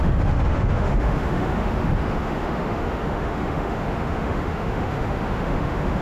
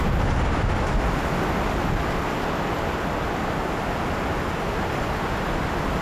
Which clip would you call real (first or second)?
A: second